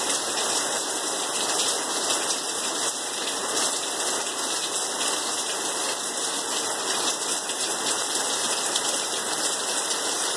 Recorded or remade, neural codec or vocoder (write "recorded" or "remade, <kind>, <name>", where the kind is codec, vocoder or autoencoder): recorded